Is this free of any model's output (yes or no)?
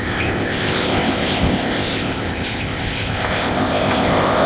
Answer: no